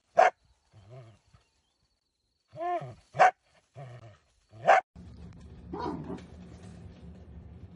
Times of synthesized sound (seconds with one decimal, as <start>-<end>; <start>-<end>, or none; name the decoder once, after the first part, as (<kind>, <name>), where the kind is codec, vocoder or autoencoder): 2.5-3.2 (vocoder, BigVGAN v2); 6.7-7.8